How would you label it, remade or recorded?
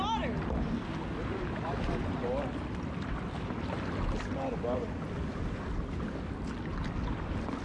recorded